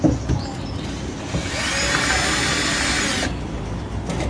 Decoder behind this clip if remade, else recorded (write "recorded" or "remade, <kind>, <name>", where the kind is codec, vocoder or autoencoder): recorded